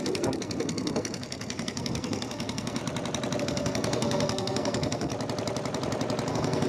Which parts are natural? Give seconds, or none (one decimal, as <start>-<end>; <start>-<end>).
2.8-3.4; 5.1-6.3